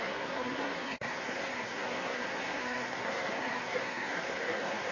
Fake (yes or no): yes